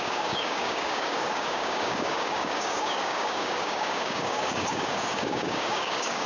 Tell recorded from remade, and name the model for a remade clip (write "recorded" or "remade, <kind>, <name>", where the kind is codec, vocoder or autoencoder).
remade, codec, DAC